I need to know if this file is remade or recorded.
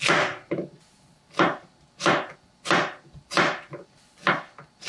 remade